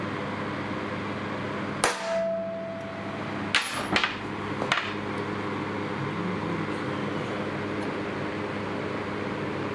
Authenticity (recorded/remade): recorded